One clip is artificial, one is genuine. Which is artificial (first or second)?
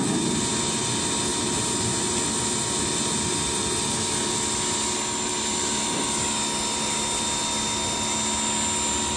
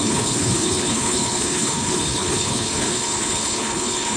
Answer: second